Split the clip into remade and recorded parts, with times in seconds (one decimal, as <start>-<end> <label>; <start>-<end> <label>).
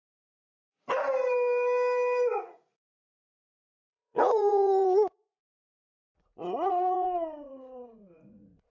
0.0-2.4 recorded; 2.4-8.7 remade